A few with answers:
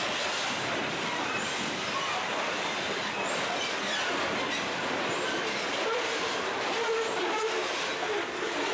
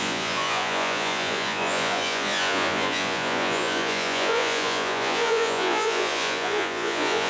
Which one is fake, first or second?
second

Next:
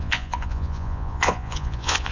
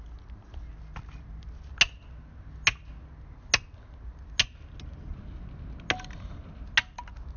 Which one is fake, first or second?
first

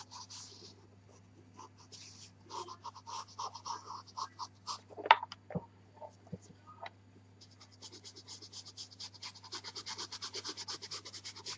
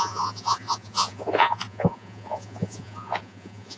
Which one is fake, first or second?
second